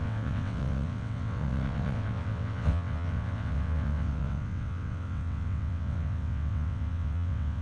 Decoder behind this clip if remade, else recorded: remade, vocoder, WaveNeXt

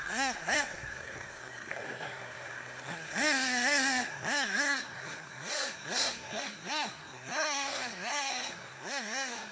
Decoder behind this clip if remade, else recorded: remade, codec, SNAC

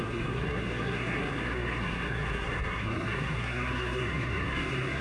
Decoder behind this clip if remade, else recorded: remade, codec, SNAC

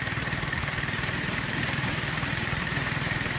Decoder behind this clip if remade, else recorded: remade, vocoder, BigVGAN v2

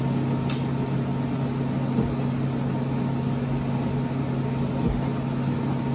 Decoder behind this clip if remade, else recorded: recorded